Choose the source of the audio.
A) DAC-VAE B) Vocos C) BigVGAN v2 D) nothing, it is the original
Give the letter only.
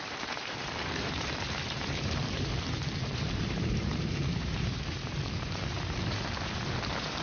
C